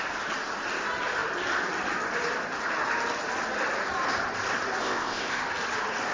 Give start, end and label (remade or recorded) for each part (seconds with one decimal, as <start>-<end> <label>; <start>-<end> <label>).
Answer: 0.0-4.8 recorded; 4.8-5.4 remade; 5.4-6.1 recorded